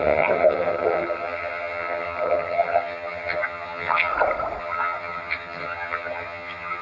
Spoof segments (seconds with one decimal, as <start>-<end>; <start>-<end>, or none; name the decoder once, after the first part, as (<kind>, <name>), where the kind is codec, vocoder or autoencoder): 0.0-4.1 (vocoder, HiFi-GAN); 4.6-6.8